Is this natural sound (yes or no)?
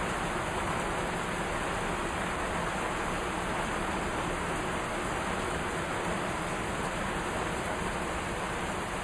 yes